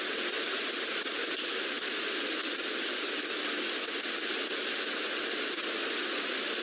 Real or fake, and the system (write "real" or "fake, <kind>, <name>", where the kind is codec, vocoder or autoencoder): real